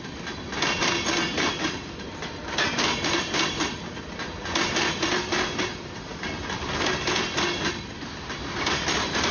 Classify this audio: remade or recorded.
recorded